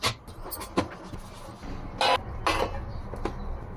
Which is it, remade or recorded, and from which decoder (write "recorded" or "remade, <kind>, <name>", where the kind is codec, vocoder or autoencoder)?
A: recorded